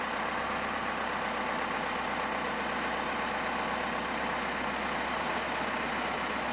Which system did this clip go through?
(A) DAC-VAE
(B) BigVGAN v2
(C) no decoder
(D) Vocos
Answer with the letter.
C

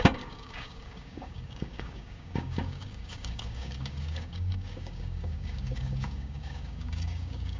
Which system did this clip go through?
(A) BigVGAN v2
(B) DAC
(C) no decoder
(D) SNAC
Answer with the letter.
B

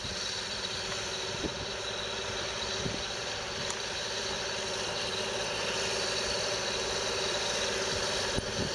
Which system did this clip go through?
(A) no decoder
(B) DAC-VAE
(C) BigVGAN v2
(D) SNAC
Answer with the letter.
C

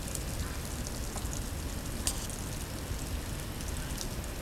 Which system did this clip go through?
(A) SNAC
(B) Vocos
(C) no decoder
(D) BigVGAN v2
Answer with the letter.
C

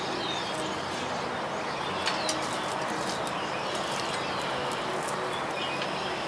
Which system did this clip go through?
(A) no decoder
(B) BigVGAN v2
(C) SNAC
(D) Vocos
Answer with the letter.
A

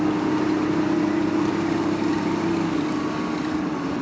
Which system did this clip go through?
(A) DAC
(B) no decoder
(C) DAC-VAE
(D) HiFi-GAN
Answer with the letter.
B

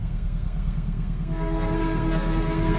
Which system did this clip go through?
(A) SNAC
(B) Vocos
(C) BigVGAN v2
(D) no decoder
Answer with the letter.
A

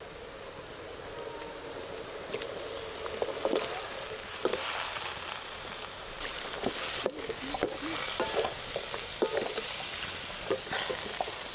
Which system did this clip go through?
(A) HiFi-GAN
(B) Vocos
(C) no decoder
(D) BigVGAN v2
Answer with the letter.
C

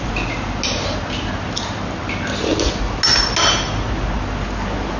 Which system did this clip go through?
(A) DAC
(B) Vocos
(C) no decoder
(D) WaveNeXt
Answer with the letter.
C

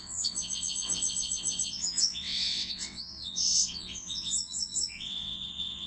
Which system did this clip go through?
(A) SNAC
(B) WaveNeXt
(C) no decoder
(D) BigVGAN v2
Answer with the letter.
B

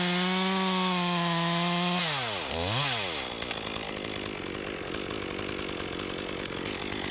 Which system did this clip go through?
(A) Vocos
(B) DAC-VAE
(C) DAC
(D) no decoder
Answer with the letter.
D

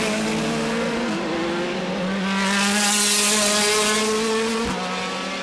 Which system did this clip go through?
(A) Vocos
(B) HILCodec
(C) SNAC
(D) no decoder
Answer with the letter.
D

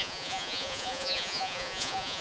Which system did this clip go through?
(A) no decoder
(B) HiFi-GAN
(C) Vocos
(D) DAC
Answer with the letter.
C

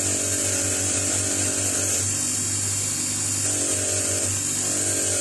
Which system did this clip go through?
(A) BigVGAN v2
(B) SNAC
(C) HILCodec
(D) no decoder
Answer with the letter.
D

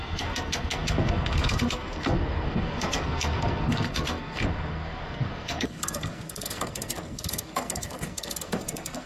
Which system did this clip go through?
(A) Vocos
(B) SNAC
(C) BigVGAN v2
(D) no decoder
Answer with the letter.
B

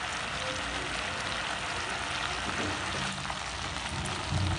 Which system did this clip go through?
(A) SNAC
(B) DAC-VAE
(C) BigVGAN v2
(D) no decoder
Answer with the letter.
D